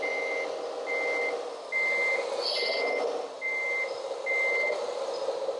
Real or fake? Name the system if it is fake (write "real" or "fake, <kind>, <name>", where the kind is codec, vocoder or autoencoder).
real